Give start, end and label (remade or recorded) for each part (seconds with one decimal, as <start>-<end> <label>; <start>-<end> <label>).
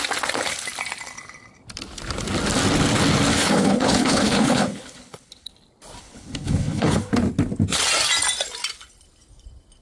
0.0-3.3 recorded; 3.3-5.5 remade; 5.5-6.0 recorded; 6.0-7.1 remade; 7.1-9.8 recorded